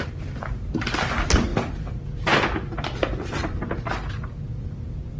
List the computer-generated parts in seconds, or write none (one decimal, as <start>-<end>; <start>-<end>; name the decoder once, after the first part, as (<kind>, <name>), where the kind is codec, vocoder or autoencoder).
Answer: none